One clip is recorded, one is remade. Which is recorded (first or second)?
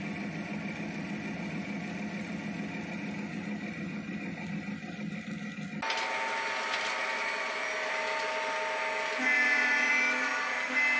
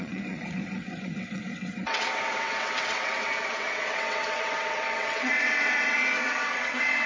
first